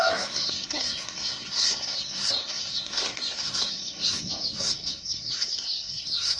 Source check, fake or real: fake